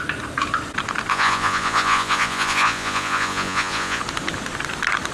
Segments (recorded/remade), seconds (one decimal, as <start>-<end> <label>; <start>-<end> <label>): 0.0-1.1 recorded; 1.1-4.0 remade; 4.0-5.1 recorded